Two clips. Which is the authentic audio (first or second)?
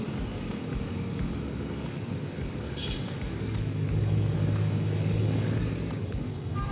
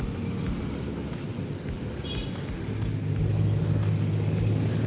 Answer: second